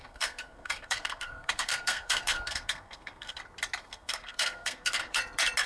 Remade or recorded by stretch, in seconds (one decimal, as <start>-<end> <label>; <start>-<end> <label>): 0.0-3.4 remade; 3.4-3.8 recorded; 3.8-5.2 remade; 5.2-5.7 recorded